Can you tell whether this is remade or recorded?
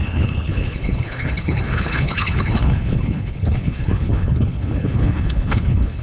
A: remade